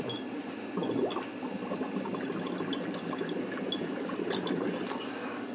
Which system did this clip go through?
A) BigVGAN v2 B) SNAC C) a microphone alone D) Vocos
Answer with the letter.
C